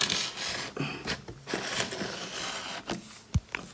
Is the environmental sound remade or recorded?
recorded